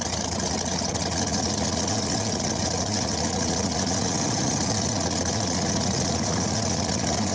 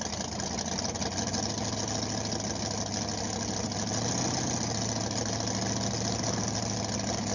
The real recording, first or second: second